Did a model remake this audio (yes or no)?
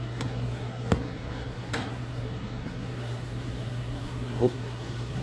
yes